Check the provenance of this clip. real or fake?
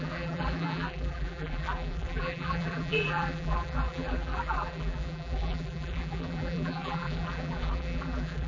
fake